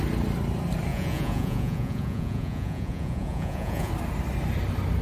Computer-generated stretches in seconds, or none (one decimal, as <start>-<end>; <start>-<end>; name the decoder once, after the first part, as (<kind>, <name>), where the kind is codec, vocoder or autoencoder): 0.9-3.9 (vocoder, Vocos)